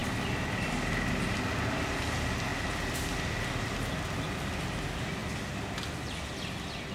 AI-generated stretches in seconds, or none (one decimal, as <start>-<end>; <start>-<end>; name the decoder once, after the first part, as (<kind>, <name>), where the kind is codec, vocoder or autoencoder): none